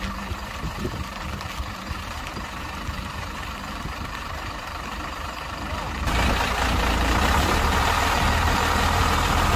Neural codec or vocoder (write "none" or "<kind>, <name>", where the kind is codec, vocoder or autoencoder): vocoder, BigVGAN v2